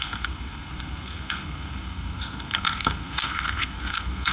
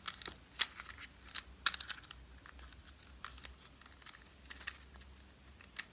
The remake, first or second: first